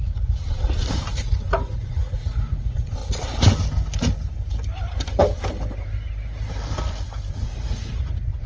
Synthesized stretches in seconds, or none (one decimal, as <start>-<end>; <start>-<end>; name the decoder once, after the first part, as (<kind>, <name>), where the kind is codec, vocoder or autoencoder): 0.0-0.4 (vocoder, Vocos); 1.1-3.0; 7.3-8.5